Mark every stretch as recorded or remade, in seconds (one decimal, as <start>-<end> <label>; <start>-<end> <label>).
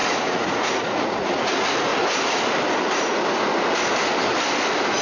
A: 0.0-1.5 remade; 1.5-5.0 recorded